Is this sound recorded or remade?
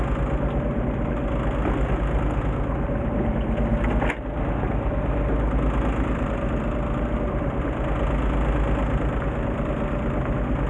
recorded